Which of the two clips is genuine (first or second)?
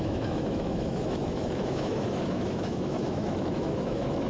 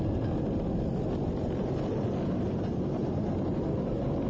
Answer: second